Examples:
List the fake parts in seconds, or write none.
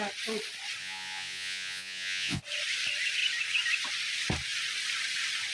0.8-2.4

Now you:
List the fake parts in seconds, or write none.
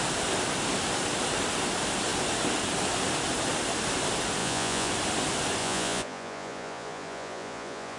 4.4-4.9; 5.6-8.0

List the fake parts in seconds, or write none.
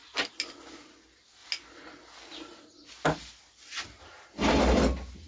none